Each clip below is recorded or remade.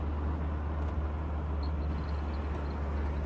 recorded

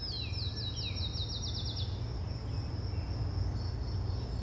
recorded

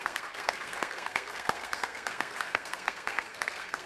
remade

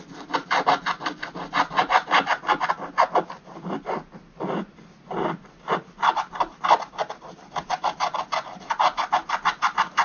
recorded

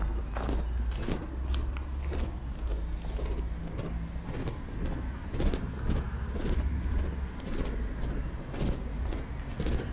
recorded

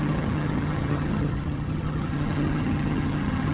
remade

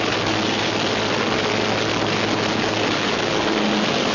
recorded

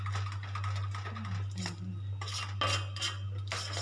recorded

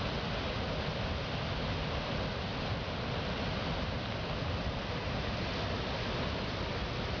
recorded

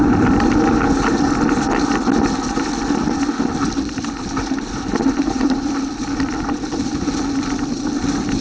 recorded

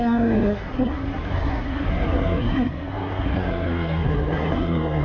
remade